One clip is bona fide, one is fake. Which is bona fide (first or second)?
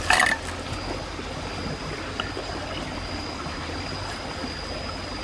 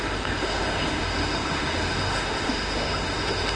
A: first